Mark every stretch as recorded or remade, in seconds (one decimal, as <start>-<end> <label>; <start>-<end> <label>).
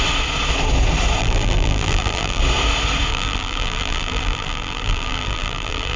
0.0-1.2 recorded; 1.2-2.4 remade; 2.4-3.1 recorded; 3.1-6.0 remade